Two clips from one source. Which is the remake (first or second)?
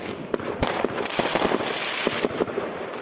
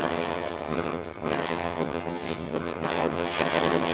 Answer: second